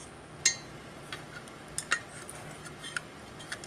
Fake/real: real